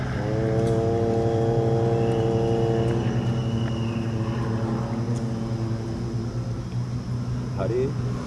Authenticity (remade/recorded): recorded